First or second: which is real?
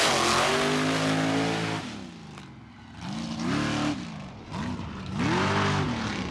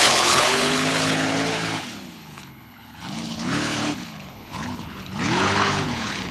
first